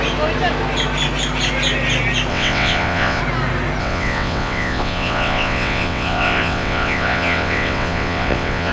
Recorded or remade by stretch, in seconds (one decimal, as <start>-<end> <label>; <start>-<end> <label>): 0.0-2.3 recorded; 2.3-3.2 remade; 3.2-3.8 recorded; 3.8-8.7 remade